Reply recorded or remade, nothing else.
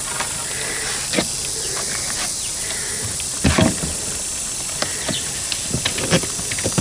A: recorded